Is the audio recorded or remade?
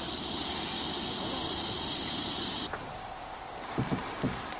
recorded